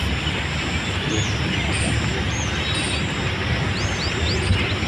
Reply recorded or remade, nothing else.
recorded